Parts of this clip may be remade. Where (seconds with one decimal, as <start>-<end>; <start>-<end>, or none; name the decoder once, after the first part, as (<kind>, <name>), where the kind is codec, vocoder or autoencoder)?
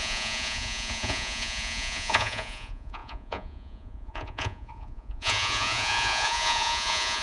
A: 0.0-7.2 (vocoder, Vocos)